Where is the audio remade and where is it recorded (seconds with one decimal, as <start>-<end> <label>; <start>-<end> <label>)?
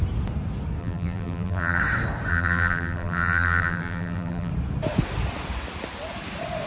0.0-0.8 recorded; 0.8-1.8 remade; 1.8-2.3 recorded; 2.3-4.5 remade; 4.5-6.7 recorded